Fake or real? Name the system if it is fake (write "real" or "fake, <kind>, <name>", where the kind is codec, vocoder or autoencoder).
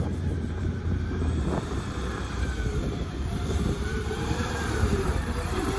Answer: fake, vocoder, BigVGAN v2